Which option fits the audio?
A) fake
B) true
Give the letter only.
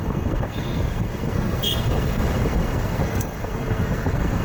A